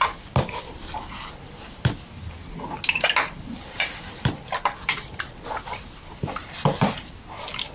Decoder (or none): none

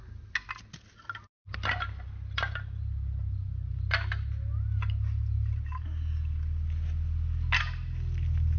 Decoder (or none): none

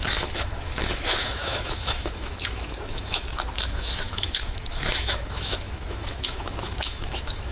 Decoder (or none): autoencoder, DAC-VAE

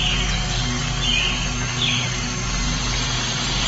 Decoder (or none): none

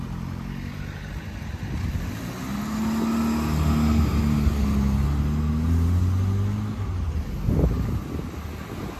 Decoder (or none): none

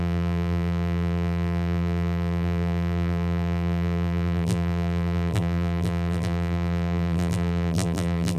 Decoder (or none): vocoder, BigVGAN v2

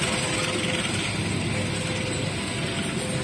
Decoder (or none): none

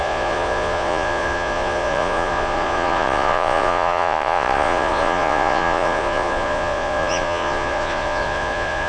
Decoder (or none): vocoder, Vocos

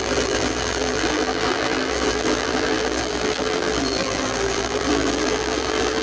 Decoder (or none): vocoder, BigVGAN v2